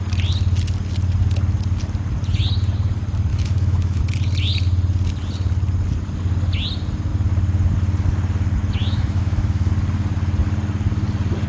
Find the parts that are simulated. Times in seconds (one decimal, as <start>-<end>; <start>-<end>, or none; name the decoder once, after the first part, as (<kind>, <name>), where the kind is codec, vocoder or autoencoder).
3.3-4.0 (autoencoder, DAC-VAE); 8.8-9.7